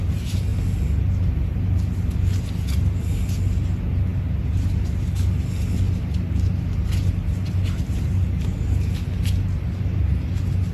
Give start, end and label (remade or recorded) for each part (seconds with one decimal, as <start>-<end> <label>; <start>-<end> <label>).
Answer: 0.0-10.7 recorded